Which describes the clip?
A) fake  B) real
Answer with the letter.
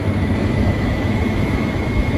A